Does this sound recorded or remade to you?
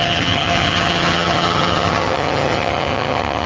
remade